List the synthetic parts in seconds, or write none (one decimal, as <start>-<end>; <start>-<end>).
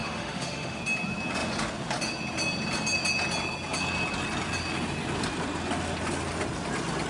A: 0.0-0.8